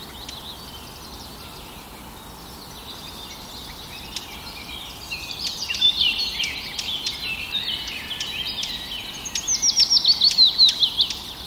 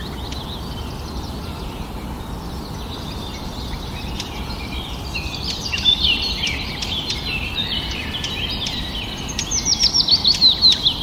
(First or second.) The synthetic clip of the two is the second